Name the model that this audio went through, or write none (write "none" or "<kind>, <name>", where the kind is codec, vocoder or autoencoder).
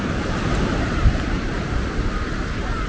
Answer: vocoder, BigVGAN v2